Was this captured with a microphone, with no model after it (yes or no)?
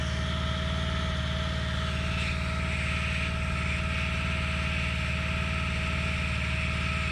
yes